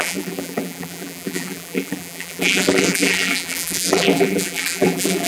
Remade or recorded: remade